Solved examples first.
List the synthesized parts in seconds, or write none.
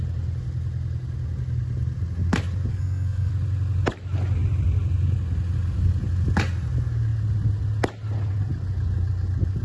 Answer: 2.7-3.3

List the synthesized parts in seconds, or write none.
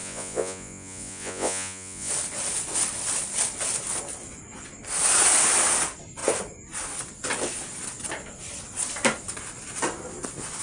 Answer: 0.0-2.1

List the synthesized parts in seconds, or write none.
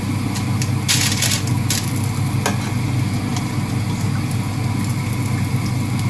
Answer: none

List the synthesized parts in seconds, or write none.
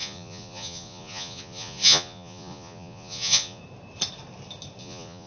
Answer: 0.0-3.6; 4.8-5.3